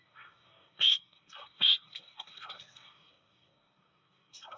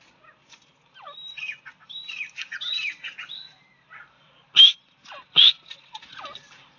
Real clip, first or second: second